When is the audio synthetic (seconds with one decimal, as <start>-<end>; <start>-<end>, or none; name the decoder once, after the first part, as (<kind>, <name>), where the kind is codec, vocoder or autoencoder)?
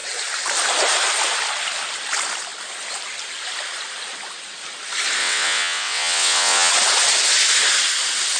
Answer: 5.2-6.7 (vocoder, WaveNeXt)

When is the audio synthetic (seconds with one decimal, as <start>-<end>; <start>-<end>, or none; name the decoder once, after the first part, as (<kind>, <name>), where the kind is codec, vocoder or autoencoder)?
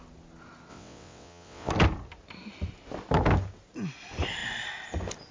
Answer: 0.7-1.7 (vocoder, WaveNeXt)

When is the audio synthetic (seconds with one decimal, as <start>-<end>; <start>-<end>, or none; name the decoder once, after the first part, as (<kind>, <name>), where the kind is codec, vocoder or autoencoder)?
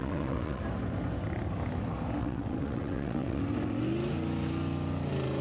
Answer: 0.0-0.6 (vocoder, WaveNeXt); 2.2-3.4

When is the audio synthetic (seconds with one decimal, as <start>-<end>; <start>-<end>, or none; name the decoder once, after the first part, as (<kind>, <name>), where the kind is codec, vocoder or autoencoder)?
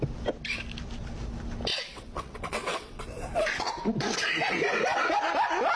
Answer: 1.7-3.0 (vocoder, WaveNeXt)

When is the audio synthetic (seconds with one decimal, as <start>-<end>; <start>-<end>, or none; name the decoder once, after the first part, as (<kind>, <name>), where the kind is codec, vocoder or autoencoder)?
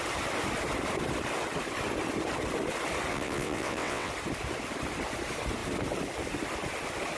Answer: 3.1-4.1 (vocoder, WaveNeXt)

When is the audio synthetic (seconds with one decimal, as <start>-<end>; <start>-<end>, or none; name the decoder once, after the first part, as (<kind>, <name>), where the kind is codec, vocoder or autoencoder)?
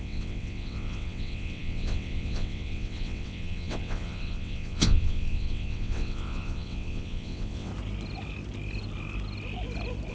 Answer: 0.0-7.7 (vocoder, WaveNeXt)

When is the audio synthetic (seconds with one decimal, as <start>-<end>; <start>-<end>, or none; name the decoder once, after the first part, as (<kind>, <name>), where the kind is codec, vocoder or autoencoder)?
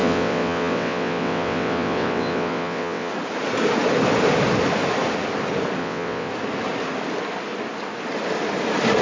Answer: 0.0-3.1 (vocoder, WaveNeXt); 5.8-6.3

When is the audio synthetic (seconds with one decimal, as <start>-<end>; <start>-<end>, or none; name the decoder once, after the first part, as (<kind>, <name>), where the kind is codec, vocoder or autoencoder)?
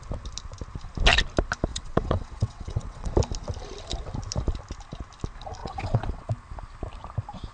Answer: 1.7-3.1 (vocoder, WaveNeXt); 5.6-6.3